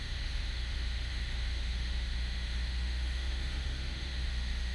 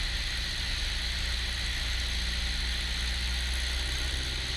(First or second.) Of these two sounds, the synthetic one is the first